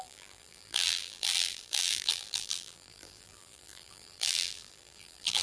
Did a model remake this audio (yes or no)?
yes